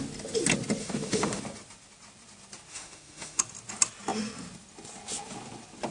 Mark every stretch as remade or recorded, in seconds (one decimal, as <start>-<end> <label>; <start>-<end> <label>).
0.0-0.8 recorded; 0.8-1.4 remade; 1.4-2.7 recorded; 2.7-3.4 remade; 3.4-5.9 recorded